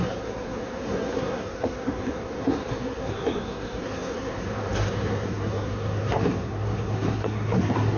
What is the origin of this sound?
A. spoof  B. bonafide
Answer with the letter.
A